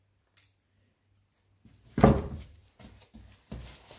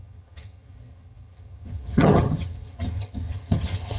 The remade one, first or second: second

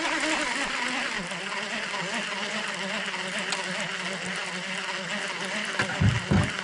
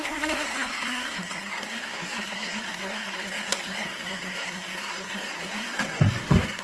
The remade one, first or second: second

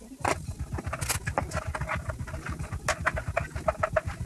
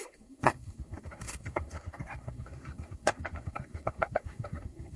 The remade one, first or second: second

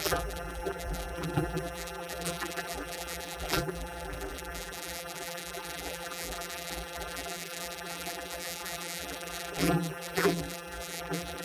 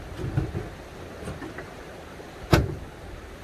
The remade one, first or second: first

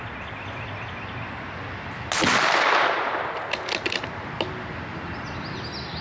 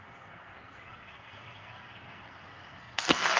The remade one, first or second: second